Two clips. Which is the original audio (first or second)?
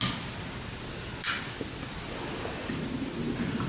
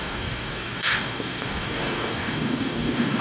first